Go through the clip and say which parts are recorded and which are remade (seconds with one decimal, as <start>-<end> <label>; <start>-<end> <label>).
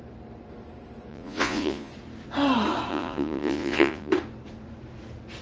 0.0-1.1 recorded; 1.1-1.9 remade; 1.9-2.9 recorded; 2.9-4.1 remade; 4.1-5.4 recorded